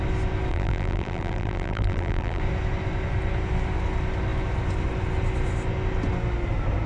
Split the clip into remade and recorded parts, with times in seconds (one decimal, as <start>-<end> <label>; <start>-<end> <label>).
0.0-0.5 recorded; 0.5-2.4 remade; 2.4-6.9 recorded